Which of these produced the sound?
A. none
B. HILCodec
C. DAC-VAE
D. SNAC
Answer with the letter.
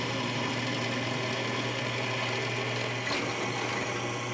A